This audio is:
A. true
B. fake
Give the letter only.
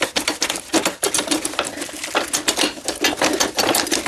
A